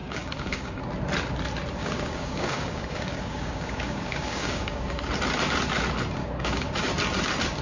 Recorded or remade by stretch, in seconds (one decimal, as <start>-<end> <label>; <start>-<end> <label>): 0.0-0.8 remade; 0.8-1.8 recorded; 1.8-5.0 remade; 5.0-6.2 recorded; 6.2-6.9 remade; 6.9-7.6 recorded